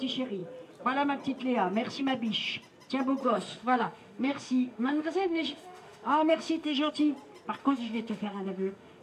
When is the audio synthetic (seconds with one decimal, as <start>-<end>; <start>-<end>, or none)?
3.2-6.9; 7.6-9.0